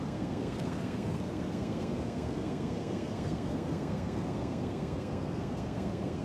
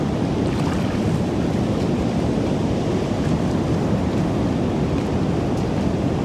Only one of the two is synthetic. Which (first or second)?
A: first